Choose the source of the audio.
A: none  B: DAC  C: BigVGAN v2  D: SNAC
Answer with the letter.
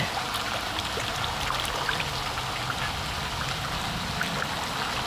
A